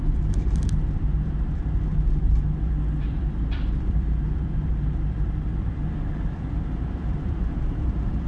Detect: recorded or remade remade